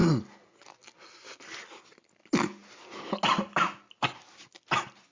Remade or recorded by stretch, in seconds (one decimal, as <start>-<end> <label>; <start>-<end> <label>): 0.0-5.1 recorded